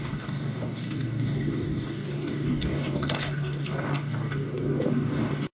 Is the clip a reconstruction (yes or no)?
yes